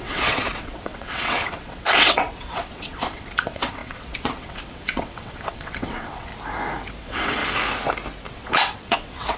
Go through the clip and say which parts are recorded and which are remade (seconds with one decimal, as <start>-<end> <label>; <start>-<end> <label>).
0.0-6.3 remade; 6.3-7.0 recorded; 7.0-7.4 remade; 7.4-8.3 recorded; 8.3-9.4 remade